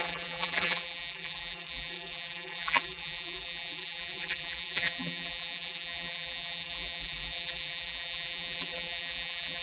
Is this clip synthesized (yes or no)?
yes